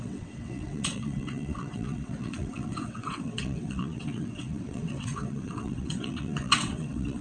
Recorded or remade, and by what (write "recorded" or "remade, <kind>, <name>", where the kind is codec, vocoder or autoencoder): remade, vocoder, WaveNeXt